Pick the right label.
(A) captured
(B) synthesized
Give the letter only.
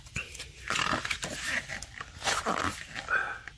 A